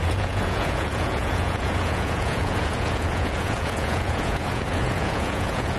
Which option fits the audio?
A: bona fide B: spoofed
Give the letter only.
B